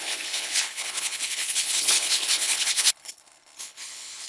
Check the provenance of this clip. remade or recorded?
remade